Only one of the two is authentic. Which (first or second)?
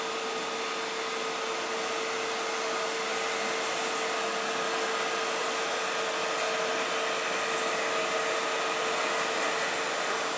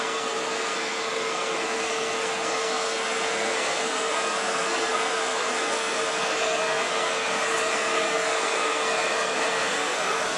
first